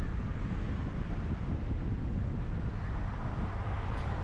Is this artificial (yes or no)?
no